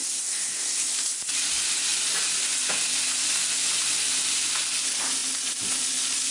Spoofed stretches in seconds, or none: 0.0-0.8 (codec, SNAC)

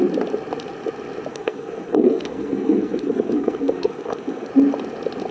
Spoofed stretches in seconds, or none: 1.3-4.5 (codec, SNAC)